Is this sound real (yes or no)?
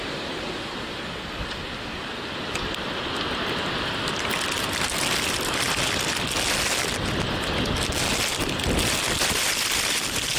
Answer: yes